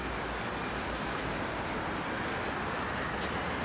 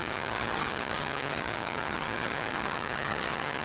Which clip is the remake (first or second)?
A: second